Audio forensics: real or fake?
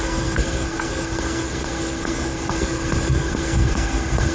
fake